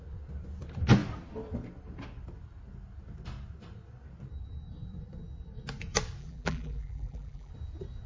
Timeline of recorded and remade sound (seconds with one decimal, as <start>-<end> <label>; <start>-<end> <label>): 0.0-6.2 recorded; 6.2-7.5 remade; 7.5-8.1 recorded